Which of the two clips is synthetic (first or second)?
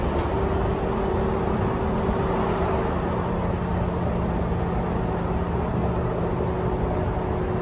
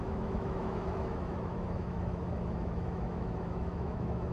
second